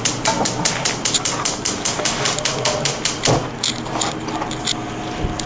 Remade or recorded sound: recorded